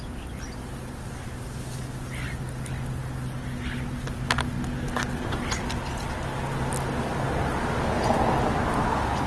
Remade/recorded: recorded